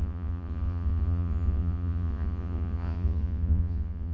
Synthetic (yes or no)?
yes